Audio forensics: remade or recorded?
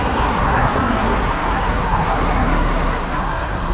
remade